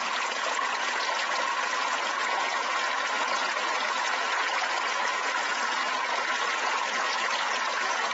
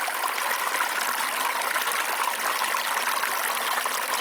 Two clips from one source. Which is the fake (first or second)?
first